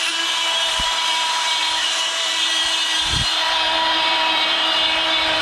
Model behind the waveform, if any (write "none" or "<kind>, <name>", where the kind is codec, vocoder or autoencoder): vocoder, BigVGAN v2